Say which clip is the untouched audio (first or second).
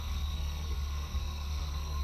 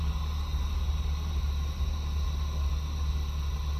second